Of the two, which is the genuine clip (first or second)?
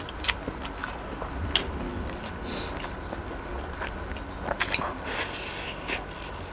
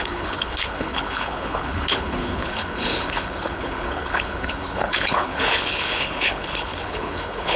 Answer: first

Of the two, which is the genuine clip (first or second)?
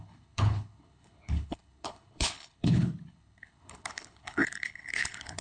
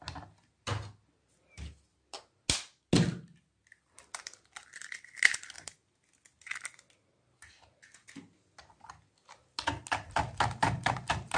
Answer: second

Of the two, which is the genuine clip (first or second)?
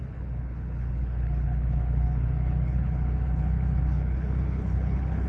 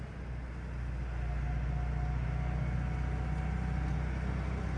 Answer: second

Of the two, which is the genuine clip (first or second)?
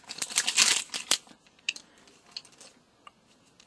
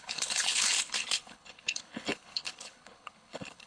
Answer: first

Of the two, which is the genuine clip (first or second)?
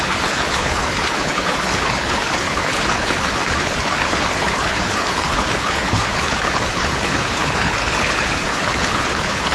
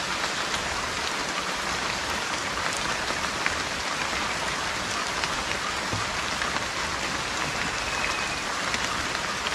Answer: second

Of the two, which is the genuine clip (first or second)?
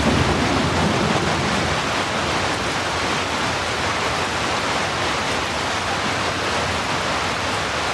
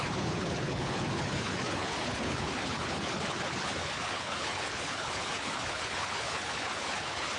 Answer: first